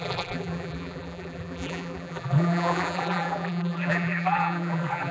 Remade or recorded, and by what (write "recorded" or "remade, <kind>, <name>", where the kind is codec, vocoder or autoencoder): remade, vocoder, BigVGAN v2